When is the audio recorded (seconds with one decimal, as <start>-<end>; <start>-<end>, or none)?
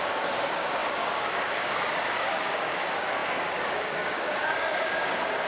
none